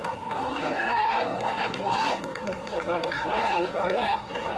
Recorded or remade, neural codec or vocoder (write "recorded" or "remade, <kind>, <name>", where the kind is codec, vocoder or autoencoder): remade, codec, SNAC